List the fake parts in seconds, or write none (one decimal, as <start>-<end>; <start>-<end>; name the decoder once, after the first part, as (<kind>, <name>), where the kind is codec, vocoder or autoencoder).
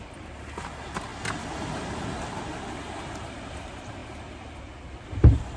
none